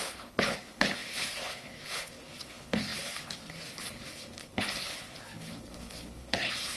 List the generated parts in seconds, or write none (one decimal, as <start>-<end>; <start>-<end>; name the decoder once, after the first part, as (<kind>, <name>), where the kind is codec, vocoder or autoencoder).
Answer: 0.0-6.8 (codec, HILCodec)